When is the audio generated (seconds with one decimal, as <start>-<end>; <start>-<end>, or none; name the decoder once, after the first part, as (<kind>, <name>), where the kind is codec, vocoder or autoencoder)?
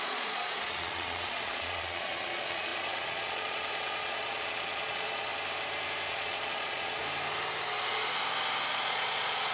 0.0-5.3 (vocoder, Vocos); 6.1-7.0; 8.7-9.5